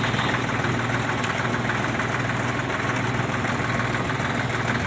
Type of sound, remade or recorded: recorded